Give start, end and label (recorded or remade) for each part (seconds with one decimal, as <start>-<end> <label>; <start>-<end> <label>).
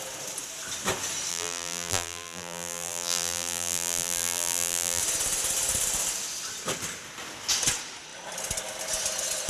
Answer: 0.0-1.3 recorded; 1.3-5.0 remade; 5.0-9.5 recorded